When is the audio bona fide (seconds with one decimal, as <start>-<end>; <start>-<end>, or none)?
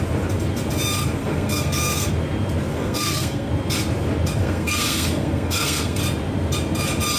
0.0-1.2; 2.1-2.7; 3.5-4.4; 6.0-7.2